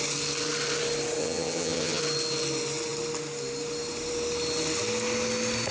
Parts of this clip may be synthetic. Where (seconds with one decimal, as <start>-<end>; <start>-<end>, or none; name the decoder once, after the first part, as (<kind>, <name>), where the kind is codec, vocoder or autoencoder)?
1.2-2.0 (vocoder, HiFi-GAN)